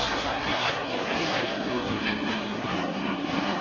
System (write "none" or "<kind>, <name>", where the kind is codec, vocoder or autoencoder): codec, SNAC